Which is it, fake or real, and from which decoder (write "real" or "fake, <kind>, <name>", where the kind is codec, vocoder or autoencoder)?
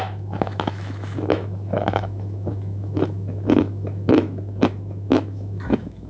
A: fake, autoencoder, DAC-VAE